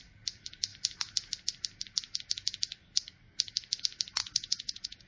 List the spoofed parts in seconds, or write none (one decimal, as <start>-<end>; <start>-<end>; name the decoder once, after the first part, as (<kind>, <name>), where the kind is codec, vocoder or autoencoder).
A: 4.2-5.1 (vocoder, Vocos)